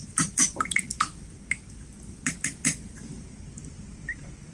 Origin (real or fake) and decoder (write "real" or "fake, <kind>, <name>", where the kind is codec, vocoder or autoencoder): real